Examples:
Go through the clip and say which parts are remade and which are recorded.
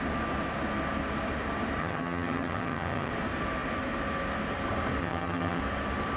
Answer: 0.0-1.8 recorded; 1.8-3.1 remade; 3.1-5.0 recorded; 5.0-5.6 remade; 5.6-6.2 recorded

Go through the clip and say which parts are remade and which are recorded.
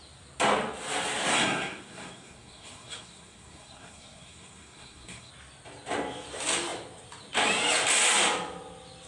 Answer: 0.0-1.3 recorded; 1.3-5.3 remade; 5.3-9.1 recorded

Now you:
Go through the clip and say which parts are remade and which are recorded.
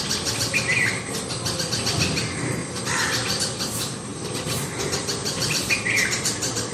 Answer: 0.0-2.6 recorded; 2.6-3.4 remade; 3.4-4.1 recorded; 4.1-4.8 remade; 4.8-5.2 recorded; 5.2-5.8 remade; 5.8-6.7 recorded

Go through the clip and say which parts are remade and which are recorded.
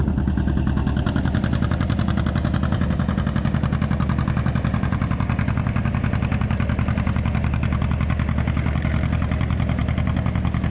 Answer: 0.0-10.7 recorded